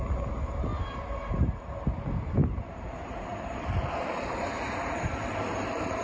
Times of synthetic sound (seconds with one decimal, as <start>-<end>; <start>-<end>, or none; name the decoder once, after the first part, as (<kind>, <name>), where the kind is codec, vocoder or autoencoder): 2.4-6.0 (vocoder, BigVGAN v2)